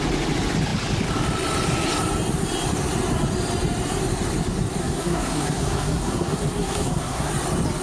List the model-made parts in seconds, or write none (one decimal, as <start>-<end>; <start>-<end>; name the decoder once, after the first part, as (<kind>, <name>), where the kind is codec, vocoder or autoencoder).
4.8-7.3 (codec, SNAC)